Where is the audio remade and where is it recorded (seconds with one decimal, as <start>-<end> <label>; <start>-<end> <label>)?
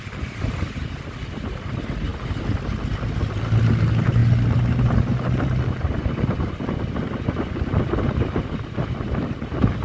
0.0-9.8 recorded